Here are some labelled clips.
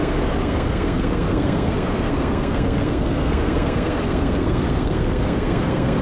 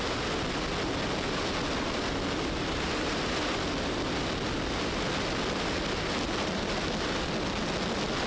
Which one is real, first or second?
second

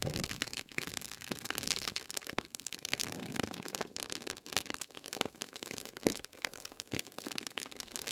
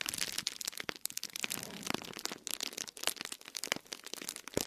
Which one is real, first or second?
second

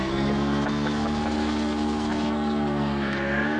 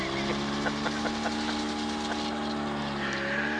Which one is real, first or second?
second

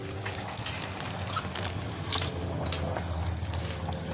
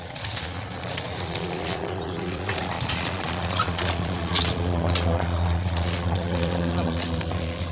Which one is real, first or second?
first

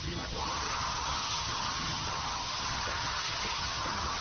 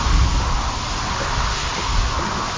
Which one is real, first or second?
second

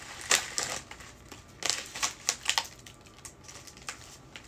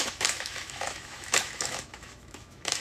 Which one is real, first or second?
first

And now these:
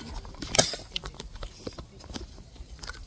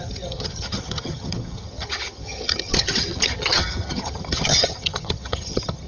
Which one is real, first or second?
first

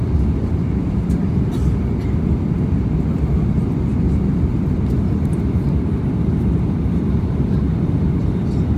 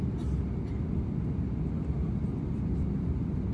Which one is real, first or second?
second